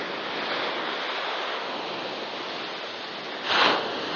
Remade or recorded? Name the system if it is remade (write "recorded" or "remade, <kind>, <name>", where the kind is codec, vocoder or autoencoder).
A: recorded